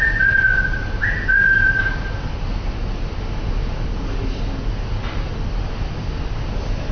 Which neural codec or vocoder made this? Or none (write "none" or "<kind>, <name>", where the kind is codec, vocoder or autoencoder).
none